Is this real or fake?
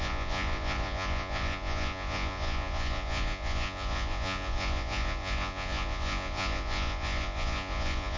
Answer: fake